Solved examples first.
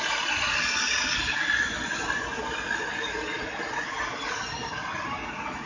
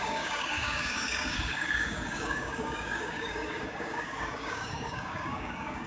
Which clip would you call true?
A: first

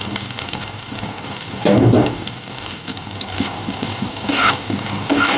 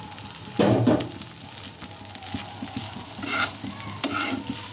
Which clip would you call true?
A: second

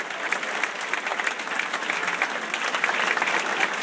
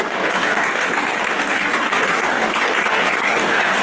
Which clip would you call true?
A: first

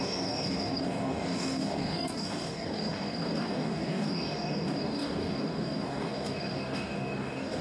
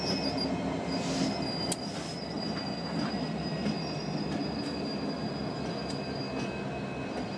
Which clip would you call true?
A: second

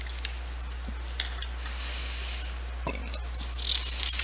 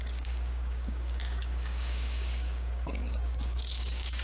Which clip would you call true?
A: first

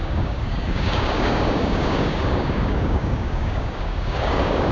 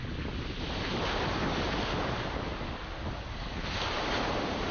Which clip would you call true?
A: second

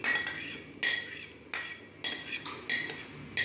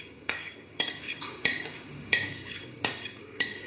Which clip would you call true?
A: first